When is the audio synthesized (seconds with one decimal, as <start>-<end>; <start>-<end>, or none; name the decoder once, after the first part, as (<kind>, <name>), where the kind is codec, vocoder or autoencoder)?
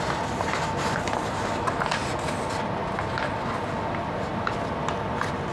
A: none